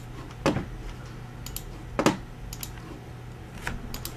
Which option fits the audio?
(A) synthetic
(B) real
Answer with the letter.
B